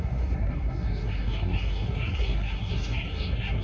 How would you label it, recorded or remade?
remade